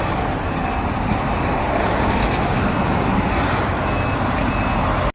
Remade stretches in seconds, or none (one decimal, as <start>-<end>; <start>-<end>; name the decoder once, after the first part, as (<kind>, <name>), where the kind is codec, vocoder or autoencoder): none